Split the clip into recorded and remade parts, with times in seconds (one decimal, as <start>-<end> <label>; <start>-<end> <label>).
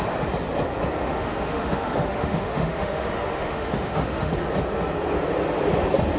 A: 0.0-1.0 recorded; 1.0-4.3 remade; 4.3-6.2 recorded